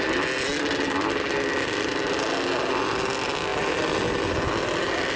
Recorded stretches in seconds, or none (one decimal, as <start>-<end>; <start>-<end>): 0.0-5.2